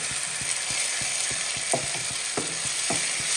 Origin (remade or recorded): recorded